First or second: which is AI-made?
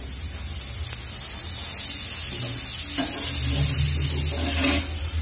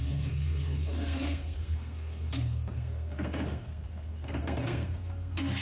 second